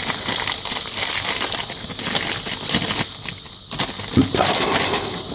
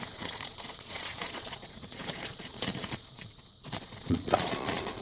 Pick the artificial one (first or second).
second